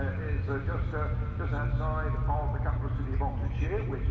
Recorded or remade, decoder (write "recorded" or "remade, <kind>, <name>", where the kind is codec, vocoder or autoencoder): recorded